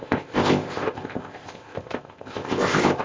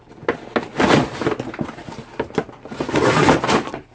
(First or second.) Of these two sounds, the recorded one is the second